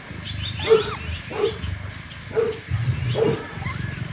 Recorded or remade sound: recorded